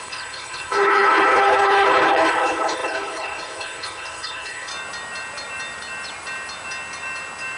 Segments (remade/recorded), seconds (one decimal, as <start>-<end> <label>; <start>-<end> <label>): 0.0-4.7 remade; 4.7-7.6 recorded